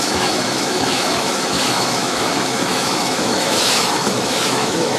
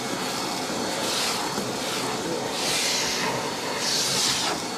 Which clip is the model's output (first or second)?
first